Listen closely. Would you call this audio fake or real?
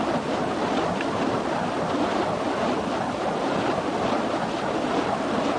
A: real